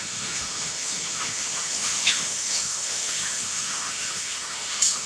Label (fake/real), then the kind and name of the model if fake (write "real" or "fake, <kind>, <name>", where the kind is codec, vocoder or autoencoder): fake, autoencoder, DAC-VAE